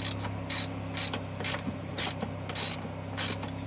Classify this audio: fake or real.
real